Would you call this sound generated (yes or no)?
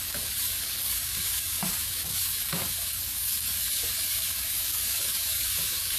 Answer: yes